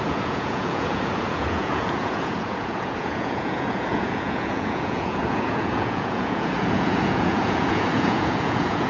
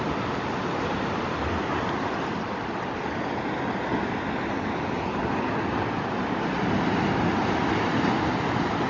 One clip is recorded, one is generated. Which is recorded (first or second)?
second